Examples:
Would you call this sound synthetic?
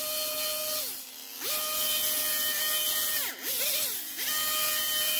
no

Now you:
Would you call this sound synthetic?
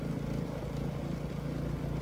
no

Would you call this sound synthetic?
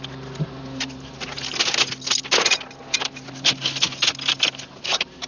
no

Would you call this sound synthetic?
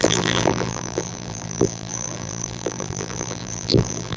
yes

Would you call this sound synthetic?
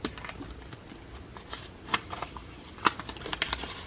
no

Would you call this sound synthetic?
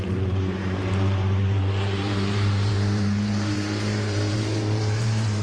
yes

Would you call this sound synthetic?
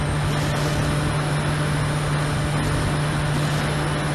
no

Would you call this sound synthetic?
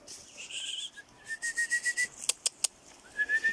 no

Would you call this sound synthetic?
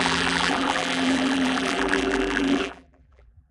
yes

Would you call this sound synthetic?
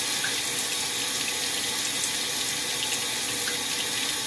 no